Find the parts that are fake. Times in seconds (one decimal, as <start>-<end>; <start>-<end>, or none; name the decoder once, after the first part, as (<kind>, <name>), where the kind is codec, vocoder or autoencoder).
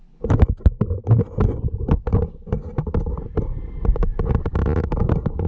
none